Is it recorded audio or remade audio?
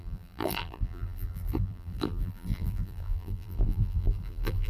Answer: remade